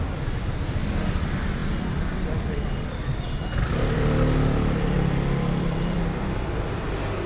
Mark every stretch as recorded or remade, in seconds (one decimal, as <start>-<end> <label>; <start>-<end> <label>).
0.0-1.6 recorded; 1.6-6.0 remade; 6.0-7.3 recorded